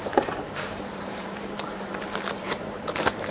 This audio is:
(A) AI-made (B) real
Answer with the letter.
A